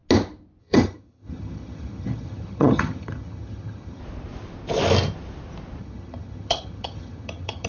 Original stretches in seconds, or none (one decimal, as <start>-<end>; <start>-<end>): 0.0-0.6; 4.0-5.8